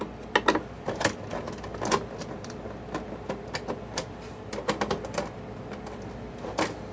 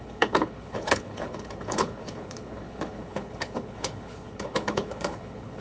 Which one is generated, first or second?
second